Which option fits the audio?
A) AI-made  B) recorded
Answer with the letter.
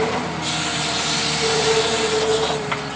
B